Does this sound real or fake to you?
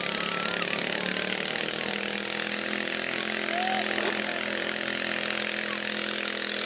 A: real